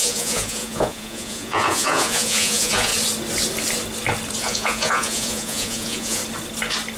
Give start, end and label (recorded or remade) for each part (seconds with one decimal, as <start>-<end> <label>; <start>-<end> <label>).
0.0-2.9 remade; 2.9-4.4 recorded; 4.4-6.2 remade; 6.2-7.0 recorded